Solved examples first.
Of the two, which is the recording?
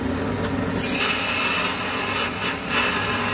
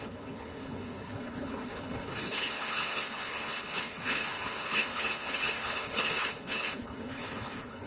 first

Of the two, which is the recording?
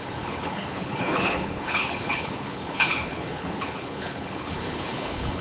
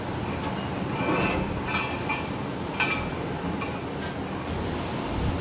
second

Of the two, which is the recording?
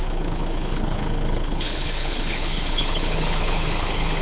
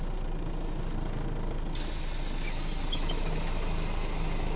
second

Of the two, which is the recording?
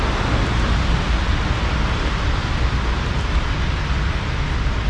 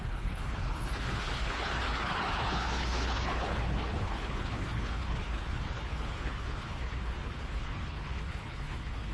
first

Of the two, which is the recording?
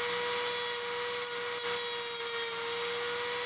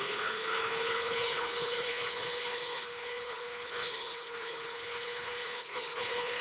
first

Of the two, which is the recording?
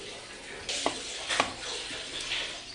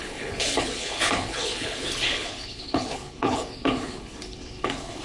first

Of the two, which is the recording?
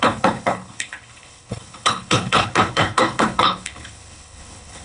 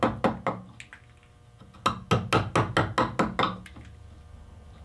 second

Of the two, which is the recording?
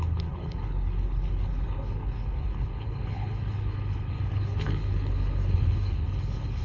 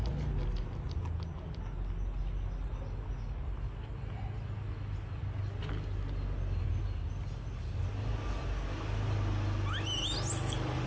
second